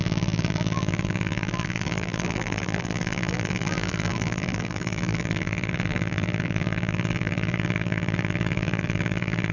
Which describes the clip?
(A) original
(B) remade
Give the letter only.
B